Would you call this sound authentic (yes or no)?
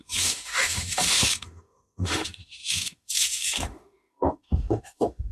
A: no